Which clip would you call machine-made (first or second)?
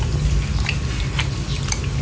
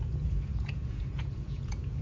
second